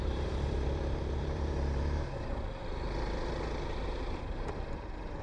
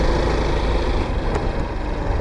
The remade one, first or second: first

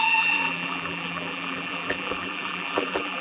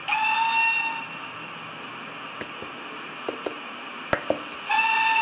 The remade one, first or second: first